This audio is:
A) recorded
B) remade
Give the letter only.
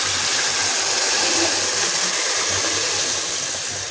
A